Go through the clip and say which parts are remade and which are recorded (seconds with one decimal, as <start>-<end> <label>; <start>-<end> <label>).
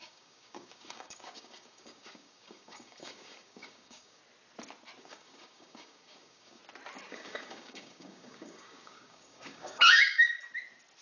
0.0-4.2 remade; 4.2-5.0 recorded; 5.0-6.6 remade; 6.6-7.1 recorded; 7.1-10.3 remade; 10.3-11.0 recorded